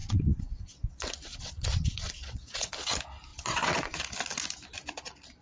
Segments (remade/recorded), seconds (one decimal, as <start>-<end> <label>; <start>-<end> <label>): 0.0-2.7 remade; 2.7-3.3 recorded; 3.3-4.0 remade; 4.0-5.4 recorded